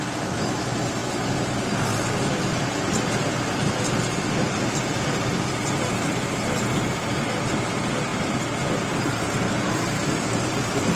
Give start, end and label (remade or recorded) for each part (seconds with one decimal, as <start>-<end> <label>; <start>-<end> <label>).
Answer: 0.0-11.0 recorded